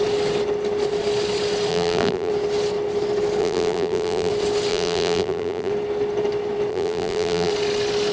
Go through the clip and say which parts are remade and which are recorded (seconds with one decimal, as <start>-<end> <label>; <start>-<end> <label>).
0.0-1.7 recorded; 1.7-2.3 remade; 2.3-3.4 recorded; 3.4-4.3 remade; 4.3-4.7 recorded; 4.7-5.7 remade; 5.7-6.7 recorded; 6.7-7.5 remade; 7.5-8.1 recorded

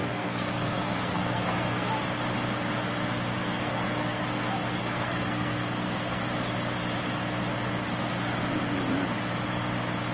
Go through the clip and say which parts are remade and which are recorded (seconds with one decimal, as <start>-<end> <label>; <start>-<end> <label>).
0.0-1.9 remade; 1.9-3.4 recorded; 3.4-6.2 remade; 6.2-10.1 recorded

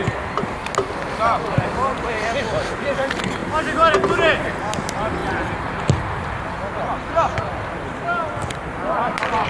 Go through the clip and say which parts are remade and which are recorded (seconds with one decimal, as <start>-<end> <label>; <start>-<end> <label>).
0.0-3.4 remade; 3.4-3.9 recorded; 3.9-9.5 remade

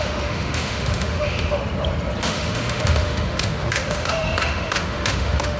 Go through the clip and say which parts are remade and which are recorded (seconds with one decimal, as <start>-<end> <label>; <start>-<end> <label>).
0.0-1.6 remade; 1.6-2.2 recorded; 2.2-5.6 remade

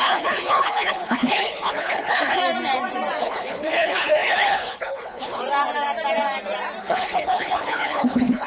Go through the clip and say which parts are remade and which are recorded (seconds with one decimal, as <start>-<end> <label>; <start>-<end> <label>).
0.0-2.4 remade; 2.4-3.2 recorded; 3.2-5.4 remade; 5.4-6.8 recorded; 6.8-8.5 remade

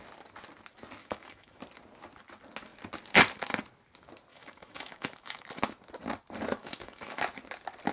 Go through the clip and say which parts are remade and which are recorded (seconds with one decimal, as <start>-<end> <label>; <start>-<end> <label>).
0.0-1.0 recorded; 1.0-1.6 remade; 1.6-4.3 recorded; 4.3-5.4 remade; 5.4-6.6 recorded; 6.6-7.2 remade; 7.2-7.9 recorded